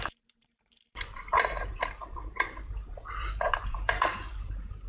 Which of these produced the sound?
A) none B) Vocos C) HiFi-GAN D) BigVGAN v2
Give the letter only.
D